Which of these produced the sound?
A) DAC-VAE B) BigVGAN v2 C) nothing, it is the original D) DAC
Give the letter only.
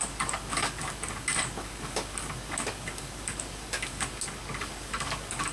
D